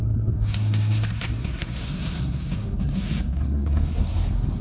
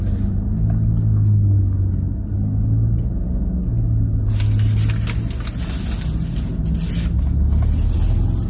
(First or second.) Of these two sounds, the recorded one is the second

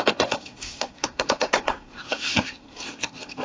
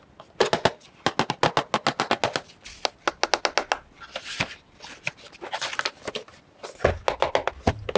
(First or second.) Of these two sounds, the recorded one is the second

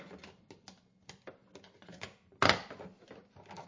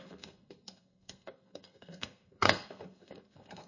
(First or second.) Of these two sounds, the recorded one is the first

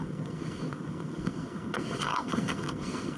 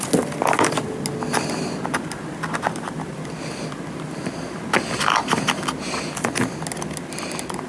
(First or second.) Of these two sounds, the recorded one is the second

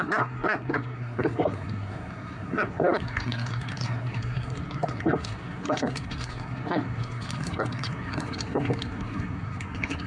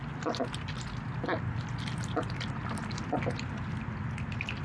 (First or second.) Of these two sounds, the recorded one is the second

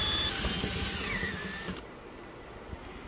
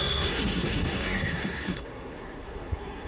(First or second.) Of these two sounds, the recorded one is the first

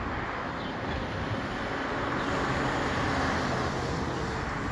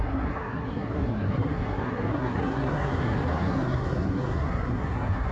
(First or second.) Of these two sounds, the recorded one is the first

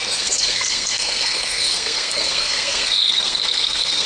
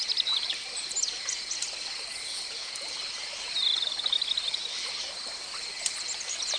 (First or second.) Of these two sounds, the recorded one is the second